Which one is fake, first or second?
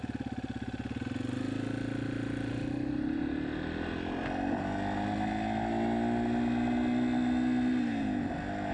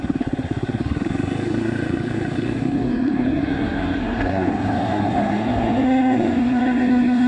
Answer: second